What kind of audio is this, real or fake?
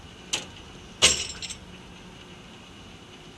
real